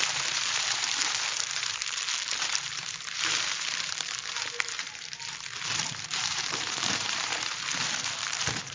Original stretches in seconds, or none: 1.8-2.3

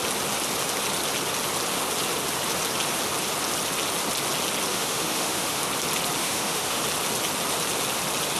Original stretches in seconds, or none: 0.0-4.7; 5.6-6.2; 6.8-8.4

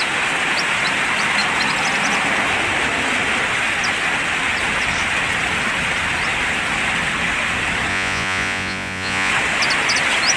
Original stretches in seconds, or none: 0.0-7.9; 9.3-10.4

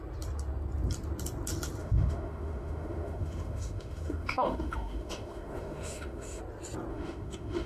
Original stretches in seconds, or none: 0.0-1.8; 6.4-6.9

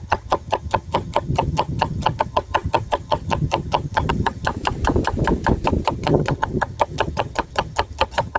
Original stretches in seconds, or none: 4.5-5.9